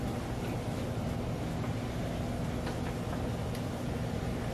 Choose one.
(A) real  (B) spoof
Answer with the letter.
A